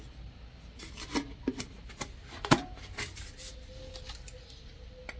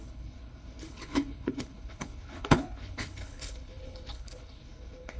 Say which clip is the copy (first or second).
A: second